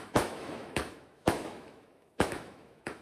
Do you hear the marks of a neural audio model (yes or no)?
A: yes